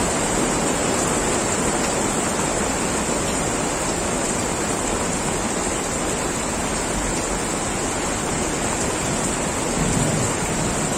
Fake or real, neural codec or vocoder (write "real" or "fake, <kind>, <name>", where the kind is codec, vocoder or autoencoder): real